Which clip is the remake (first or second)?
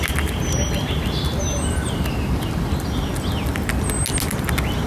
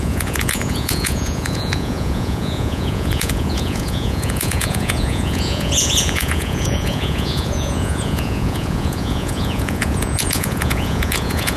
second